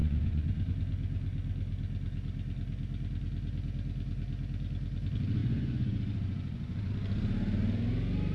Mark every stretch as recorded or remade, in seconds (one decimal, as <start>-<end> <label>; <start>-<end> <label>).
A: 0.0-0.7 remade; 0.7-5.4 recorded; 5.4-6.9 remade; 6.9-8.3 recorded